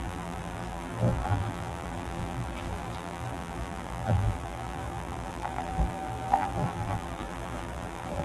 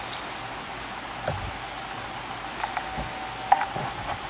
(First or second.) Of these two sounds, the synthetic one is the first